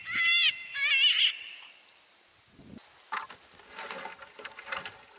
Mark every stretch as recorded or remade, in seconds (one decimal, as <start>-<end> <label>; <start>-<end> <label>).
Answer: 0.0-5.2 recorded